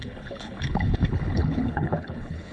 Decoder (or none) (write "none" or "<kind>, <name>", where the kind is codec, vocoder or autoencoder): codec, HILCodec